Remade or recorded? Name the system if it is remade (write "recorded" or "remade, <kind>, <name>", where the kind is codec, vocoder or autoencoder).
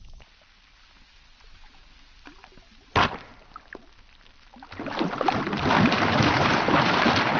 recorded